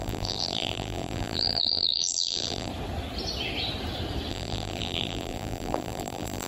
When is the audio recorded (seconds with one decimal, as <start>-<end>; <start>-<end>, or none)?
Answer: 2.7-4.3